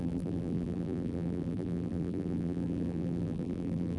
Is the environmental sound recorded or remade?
remade